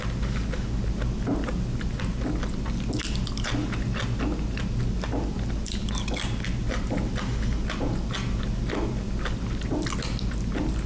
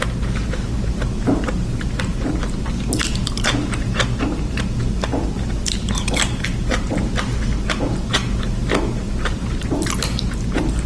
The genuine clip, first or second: first